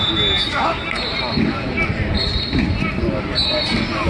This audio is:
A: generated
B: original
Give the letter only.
B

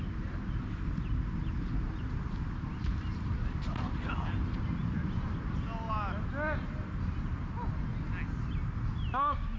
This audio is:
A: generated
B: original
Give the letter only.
B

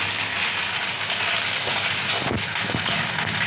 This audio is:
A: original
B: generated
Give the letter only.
A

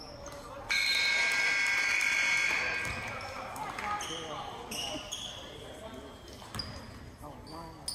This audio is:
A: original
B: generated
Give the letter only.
A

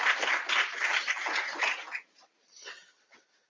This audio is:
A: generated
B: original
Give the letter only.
B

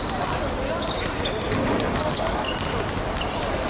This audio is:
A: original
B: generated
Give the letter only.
A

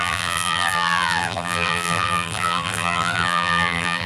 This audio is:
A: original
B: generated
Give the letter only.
B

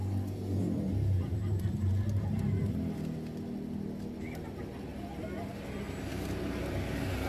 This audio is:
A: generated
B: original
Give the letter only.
B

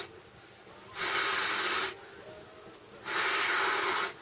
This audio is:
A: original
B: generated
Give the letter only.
A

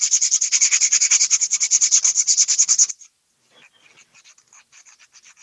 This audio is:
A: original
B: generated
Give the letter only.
A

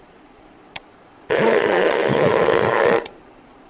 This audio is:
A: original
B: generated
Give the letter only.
B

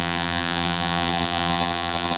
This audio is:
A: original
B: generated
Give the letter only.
B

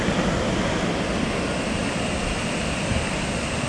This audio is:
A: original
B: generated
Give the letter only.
A